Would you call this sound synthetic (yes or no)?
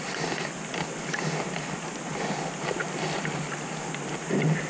no